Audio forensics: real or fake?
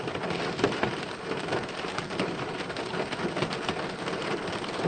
real